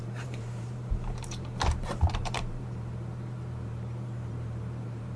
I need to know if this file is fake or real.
fake